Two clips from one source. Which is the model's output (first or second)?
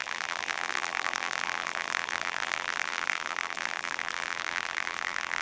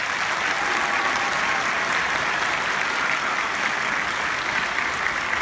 first